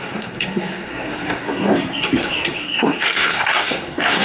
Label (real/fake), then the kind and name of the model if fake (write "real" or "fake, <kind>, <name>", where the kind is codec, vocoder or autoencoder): fake, codec, SNAC